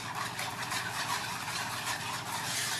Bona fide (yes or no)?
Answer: yes